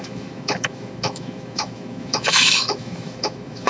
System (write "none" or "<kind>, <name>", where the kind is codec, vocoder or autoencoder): autoencoder, DAC-VAE